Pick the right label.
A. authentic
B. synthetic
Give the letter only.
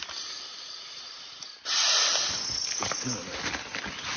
A